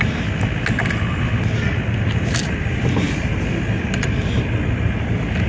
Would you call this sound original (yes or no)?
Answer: yes